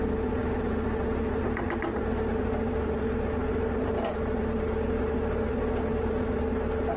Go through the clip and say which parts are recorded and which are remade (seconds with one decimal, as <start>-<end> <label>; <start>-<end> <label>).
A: 0.0-7.0 recorded